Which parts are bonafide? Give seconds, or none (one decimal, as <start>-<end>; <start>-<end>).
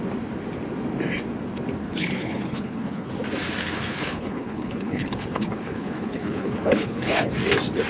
0.0-1.8; 3.1-3.6; 7.3-7.9